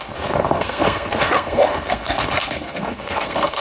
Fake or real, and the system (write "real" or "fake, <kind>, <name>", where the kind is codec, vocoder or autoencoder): fake, codec, SNAC